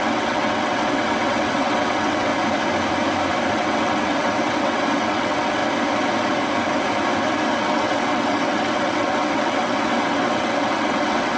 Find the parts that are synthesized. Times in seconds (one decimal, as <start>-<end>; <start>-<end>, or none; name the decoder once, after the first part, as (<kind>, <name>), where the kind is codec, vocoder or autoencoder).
0.0-2.3 (vocoder, WaveNeXt); 3.5-5.6; 7.6-11.4